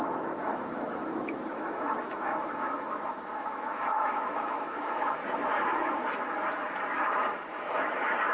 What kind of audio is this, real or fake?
fake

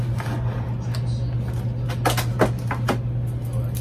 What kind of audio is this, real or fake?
real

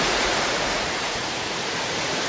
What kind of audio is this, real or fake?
fake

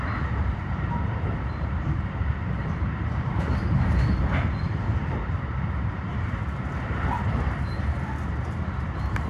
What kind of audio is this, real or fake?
fake